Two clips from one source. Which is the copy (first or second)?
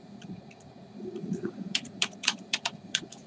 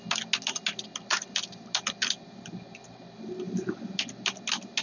first